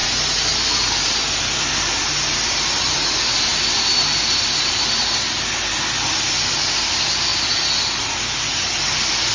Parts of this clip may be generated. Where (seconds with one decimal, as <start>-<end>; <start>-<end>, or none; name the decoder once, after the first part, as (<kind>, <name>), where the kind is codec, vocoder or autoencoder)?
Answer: none

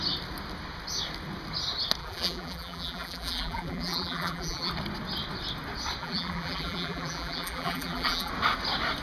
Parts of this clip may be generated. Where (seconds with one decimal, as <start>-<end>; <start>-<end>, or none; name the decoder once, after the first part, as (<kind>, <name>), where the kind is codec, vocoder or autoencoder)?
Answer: 2.0-4.7 (vocoder, BigVGAN v2); 6.0-8.3